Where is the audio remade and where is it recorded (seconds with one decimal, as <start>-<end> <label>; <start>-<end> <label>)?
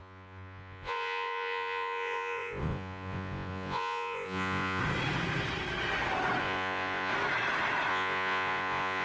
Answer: 0.0-4.8 remade; 4.8-6.4 recorded; 6.4-7.1 remade; 7.1-7.9 recorded; 7.9-9.0 remade